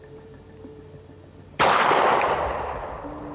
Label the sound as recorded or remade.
recorded